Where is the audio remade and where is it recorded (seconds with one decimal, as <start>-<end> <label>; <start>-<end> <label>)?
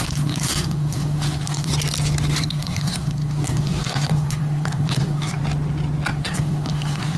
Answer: 0.0-1.7 remade; 1.7-2.4 recorded; 2.4-5.4 remade; 5.4-6.1 recorded; 6.1-7.2 remade